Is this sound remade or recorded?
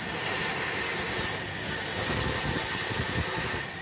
recorded